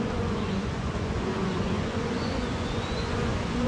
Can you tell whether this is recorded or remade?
remade